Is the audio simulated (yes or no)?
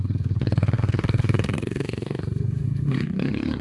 yes